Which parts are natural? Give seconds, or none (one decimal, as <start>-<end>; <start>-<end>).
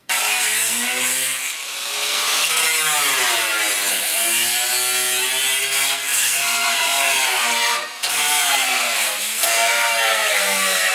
2.6-3.9; 4.5-5.6